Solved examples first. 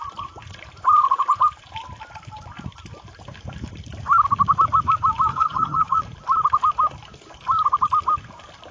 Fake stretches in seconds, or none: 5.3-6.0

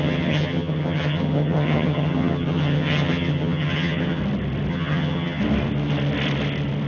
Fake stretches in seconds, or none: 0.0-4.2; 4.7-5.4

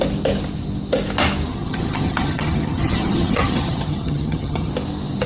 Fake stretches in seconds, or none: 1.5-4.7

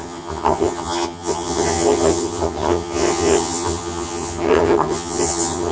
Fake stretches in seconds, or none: 0.0-5.7

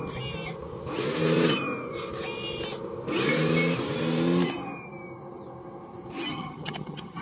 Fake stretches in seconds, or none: 6.3-7.2

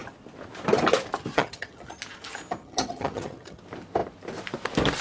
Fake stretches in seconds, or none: 1.3-2.0; 2.6-3.6

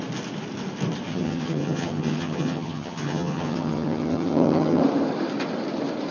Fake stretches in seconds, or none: 1.1-4.8

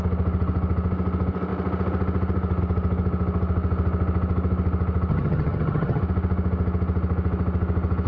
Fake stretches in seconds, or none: 5.1-6.0